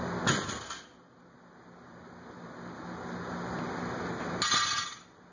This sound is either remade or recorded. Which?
recorded